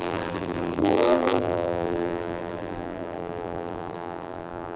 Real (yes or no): no